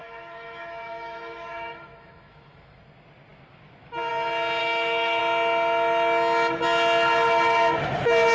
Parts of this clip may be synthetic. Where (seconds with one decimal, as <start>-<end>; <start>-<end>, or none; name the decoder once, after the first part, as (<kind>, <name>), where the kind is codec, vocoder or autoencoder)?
0.0-2.8 (autoencoder, DAC-VAE); 4.6-5.2